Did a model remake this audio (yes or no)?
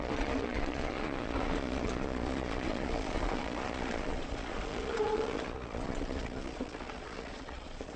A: yes